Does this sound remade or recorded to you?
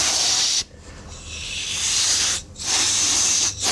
recorded